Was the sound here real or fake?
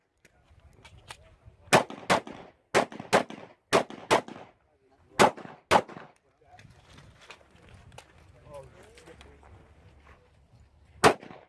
real